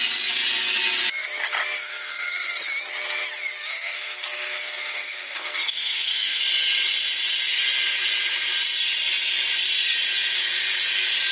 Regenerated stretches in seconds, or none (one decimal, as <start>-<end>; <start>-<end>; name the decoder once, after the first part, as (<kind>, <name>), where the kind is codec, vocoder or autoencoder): 1.9-2.5 (codec, SNAC); 3.7-6.4